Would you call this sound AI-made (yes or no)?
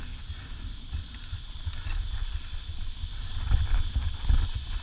no